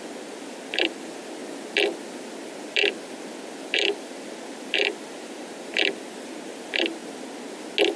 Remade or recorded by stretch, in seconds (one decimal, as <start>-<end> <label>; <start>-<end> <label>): 0.0-1.4 remade; 1.4-2.6 recorded; 2.6-7.0 remade; 7.0-8.0 recorded